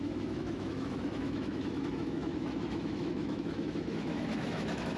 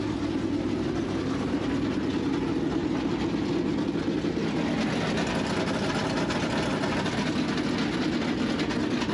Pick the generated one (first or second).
first